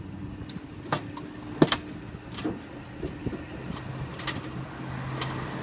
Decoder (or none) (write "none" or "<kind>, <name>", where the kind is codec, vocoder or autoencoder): none